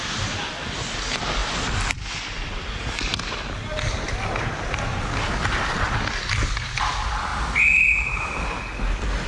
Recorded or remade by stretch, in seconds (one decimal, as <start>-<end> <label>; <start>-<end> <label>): 0.0-9.3 recorded